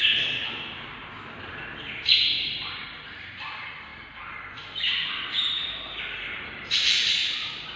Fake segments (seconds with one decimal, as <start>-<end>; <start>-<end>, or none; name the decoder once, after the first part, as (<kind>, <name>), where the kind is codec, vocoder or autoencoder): 0.0-7.2 (vocoder, BigVGAN v2)